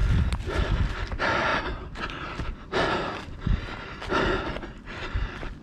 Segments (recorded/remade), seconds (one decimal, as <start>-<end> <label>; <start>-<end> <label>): 0.0-5.6 recorded